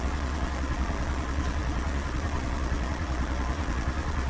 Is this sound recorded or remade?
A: remade